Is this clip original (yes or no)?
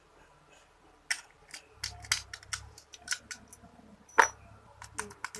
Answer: yes